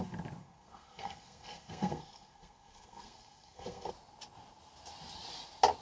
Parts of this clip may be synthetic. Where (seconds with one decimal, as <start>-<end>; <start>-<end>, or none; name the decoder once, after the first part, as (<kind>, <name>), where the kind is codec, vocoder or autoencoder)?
0.4-3.9 (codec, SNAC)